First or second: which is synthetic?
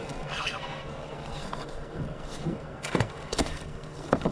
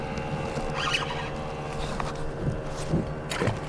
first